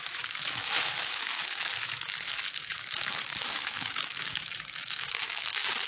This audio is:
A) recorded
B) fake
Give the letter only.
B